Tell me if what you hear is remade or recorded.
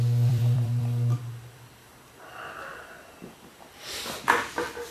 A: remade